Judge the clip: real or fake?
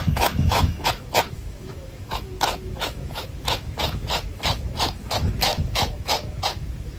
fake